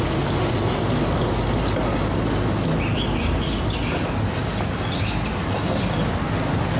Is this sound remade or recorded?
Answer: recorded